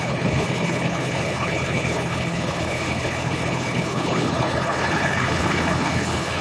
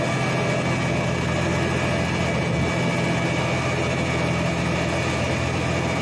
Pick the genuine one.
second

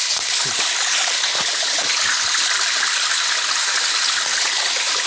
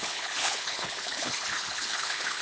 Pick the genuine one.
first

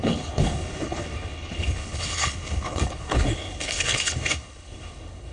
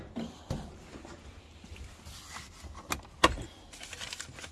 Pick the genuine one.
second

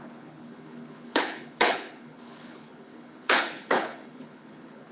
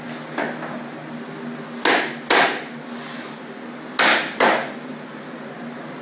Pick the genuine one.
second